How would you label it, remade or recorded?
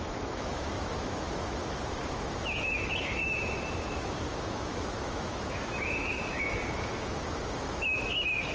remade